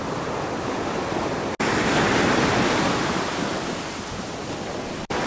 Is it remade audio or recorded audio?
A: recorded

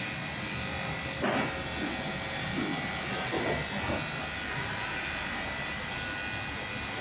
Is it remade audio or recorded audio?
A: recorded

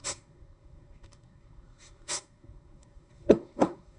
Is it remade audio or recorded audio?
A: remade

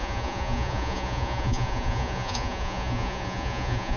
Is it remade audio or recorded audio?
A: remade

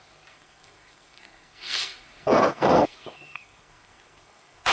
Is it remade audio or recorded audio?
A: remade